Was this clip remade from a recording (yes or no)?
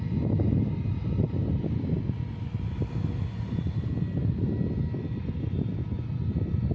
no